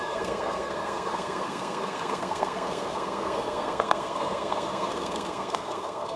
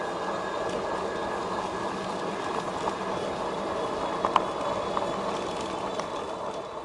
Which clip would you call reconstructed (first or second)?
first